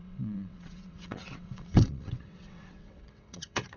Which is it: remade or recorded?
remade